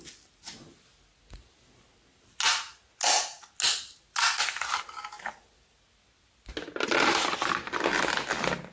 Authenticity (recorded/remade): recorded